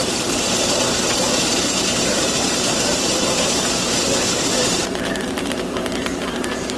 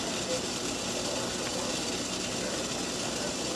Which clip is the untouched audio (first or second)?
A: second